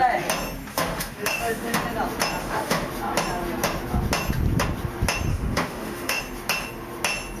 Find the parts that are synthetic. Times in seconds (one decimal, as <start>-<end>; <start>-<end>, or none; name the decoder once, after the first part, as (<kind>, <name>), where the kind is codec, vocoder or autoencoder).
0.7-1.8 (autoencoder, DAC-VAE); 2.4-2.9; 5.3-6.2